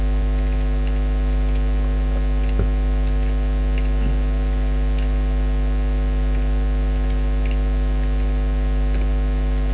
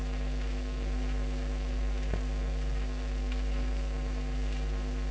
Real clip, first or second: first